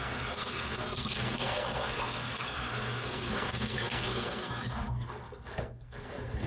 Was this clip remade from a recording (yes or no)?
yes